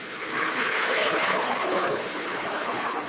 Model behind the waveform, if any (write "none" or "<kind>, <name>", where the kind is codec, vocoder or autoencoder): codec, HILCodec